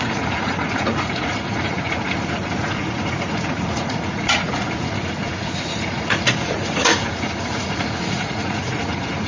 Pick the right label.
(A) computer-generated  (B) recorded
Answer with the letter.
A